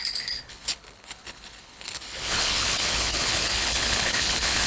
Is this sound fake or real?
fake